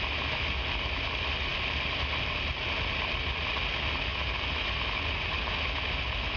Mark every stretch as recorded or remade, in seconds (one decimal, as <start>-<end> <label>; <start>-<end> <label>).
0.0-1.5 recorded; 1.5-2.6 remade; 2.6-6.4 recorded